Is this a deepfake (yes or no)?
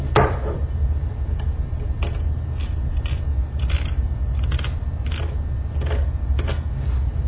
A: yes